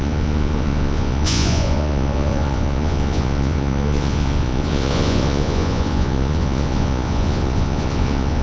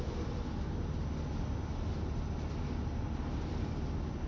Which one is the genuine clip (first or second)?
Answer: second